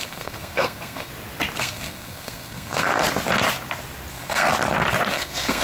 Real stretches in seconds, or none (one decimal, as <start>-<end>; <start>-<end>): 1.1-1.6; 2.9-4.1; 4.5-5.1